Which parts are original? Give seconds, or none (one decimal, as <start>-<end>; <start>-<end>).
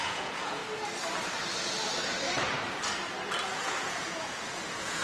0.6-3.6